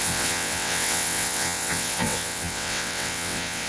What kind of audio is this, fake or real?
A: fake